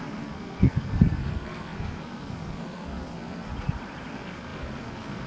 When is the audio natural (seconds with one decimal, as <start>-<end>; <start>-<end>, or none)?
3.5-4.1